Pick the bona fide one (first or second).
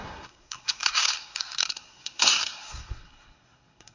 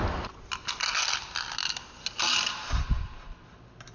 second